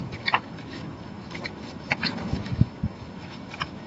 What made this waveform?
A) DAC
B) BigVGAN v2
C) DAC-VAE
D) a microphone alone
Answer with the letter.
C